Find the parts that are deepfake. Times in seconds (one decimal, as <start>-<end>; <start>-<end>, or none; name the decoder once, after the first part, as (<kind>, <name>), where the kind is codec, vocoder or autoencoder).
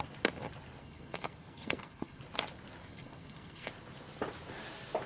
0.8-2.2 (codec, SNAC); 2.8-3.7